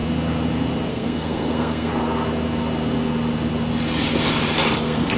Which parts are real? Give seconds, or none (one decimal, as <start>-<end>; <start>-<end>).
0.0-0.9; 1.9-4.8